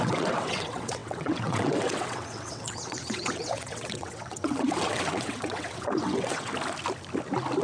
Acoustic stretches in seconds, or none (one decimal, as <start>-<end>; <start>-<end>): 6.5-7.6